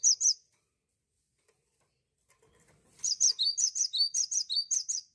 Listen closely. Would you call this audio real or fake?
fake